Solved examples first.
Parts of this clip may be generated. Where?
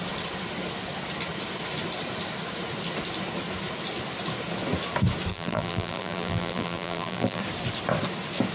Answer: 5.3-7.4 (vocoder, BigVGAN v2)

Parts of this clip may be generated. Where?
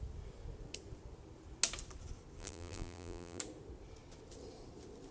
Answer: 2.4-3.4 (vocoder, BigVGAN v2)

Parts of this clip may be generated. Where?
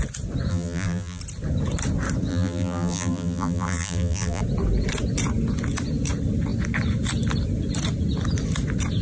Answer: 0.5-1.2 (vocoder, BigVGAN v2); 2.3-4.4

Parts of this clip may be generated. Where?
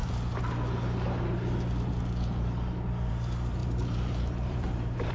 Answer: 3.6-5.1 (vocoder, BigVGAN v2)